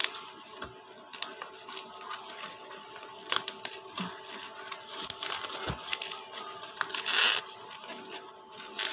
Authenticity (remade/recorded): recorded